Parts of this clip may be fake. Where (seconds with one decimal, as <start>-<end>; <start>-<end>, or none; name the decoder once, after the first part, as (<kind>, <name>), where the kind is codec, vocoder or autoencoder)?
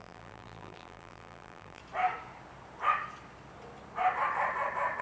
0.0-1.8 (vocoder, BigVGAN v2)